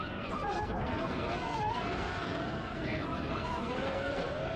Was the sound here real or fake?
fake